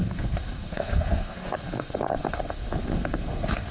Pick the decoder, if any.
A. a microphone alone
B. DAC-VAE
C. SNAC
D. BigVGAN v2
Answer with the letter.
C